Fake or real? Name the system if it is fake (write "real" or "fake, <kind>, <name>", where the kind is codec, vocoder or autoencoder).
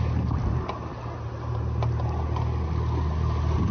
real